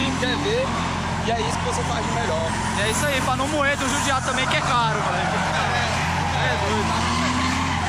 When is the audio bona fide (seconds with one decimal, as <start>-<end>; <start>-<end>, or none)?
1.5-7.9